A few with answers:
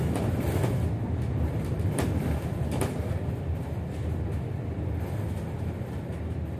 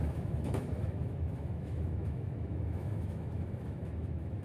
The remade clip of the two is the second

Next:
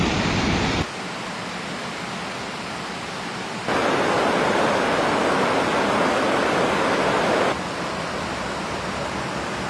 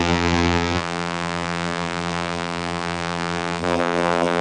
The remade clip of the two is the second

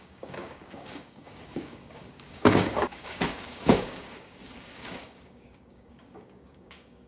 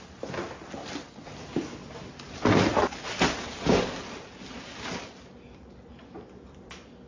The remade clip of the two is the first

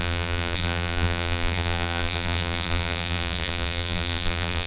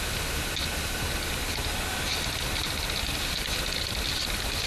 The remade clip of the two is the first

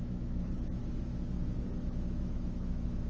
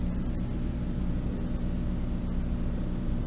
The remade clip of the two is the first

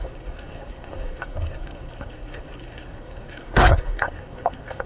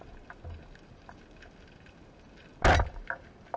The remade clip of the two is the first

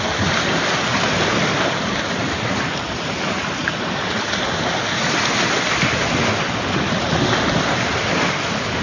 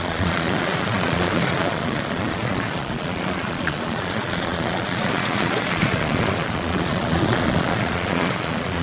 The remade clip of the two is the second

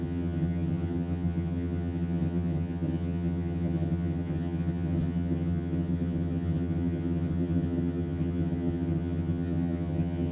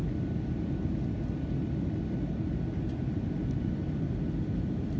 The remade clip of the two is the first